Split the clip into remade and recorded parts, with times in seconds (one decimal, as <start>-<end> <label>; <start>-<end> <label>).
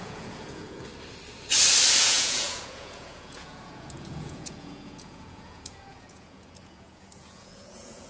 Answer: 0.0-0.9 remade; 0.9-2.0 recorded; 2.0-8.1 remade